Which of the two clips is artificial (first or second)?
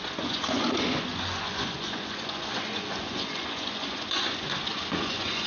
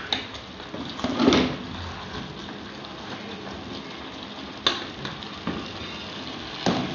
first